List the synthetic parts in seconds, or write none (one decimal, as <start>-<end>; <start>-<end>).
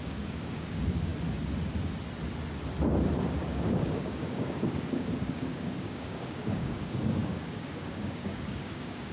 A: 0.0-1.1; 3.3-9.1